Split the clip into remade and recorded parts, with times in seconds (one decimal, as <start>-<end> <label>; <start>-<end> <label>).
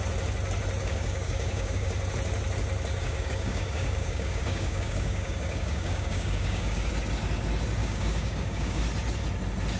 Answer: 0.0-0.8 recorded; 0.8-1.9 remade; 1.9-3.0 recorded; 3.0-6.9 remade; 6.9-7.8 recorded; 7.8-8.8 remade; 8.8-9.8 recorded